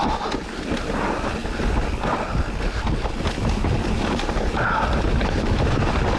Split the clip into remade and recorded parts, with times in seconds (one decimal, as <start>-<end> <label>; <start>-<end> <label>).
0.0-6.2 recorded